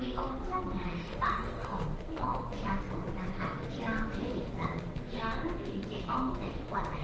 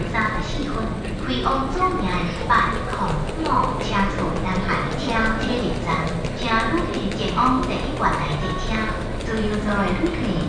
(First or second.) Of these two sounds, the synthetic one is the first